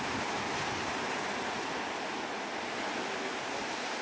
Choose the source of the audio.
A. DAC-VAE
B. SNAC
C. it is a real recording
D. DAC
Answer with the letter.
C